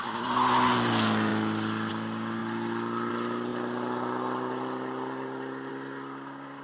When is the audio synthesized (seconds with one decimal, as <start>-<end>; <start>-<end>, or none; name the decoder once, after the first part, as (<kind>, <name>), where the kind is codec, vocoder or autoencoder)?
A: none